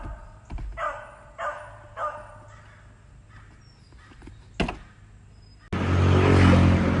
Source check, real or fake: real